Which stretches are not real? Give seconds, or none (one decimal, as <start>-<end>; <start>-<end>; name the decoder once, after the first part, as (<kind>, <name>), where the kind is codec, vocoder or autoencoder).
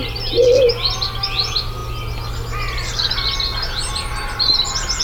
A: none